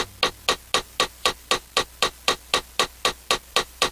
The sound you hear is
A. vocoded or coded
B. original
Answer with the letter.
B